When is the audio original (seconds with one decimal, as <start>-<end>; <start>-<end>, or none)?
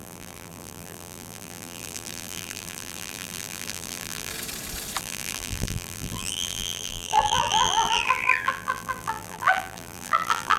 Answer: 4.3-5.0